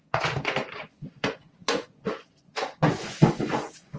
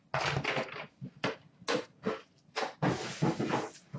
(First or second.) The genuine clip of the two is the second